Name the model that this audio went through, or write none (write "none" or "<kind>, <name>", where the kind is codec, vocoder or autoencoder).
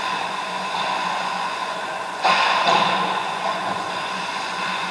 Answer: vocoder, Vocos